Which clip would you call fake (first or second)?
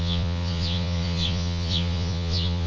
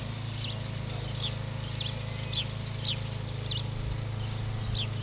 first